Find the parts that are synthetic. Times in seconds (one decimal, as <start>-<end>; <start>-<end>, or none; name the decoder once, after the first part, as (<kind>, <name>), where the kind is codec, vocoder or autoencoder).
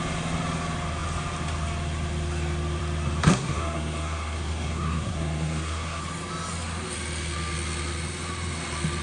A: 3.2-6.0 (codec, SNAC)